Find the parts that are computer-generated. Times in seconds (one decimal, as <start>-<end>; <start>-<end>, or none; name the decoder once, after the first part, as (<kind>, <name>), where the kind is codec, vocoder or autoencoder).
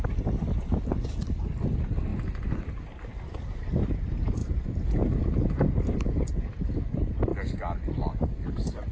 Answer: none